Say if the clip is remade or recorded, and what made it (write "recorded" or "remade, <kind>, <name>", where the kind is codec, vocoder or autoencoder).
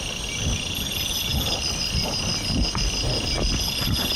recorded